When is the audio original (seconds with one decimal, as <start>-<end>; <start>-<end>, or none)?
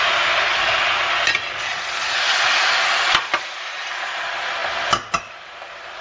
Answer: 0.0-6.0